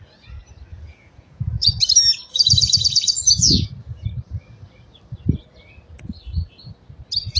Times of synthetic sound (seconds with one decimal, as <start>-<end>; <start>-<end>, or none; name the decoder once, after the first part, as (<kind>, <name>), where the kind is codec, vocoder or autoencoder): 0.7-1.8 (vocoder, Vocos); 2.2-3.7

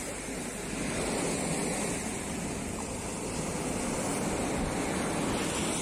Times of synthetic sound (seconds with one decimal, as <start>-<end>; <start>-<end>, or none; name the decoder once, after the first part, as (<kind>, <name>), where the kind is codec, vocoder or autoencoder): none